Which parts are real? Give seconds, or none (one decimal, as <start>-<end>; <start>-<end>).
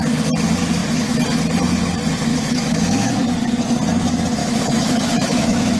0.0-2.3; 3.1-4.4